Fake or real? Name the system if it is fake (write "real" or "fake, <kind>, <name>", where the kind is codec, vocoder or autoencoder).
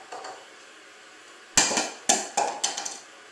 real